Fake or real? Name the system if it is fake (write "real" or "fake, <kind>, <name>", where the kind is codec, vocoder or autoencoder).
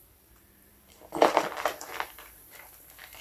fake, vocoder, BigVGAN v2